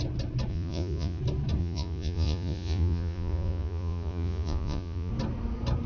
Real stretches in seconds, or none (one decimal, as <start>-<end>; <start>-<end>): 0.0-0.5; 1.2-1.6; 5.1-5.9